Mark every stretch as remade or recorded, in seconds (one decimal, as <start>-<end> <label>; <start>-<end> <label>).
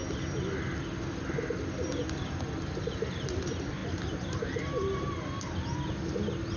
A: 0.0-6.6 recorded